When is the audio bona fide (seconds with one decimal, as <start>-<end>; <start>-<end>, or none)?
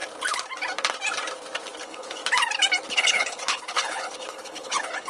0.0-1.8; 2.2-2.9